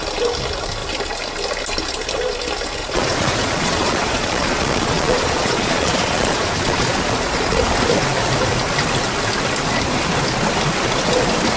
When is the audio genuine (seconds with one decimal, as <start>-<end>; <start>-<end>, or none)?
0.0-2.8; 7.6-11.6